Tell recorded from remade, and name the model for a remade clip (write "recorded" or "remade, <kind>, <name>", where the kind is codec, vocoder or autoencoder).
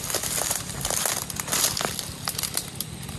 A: remade, vocoder, BigVGAN v2